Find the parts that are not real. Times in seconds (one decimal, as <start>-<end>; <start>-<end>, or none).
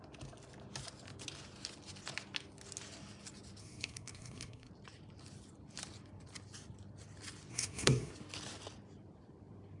3.6-4.7; 7.5-8.1